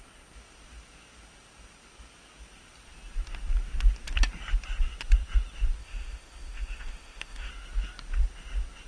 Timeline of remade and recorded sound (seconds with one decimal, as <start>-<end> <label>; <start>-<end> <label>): 0.0-5.8 recorded; 5.8-7.5 remade; 7.5-8.9 recorded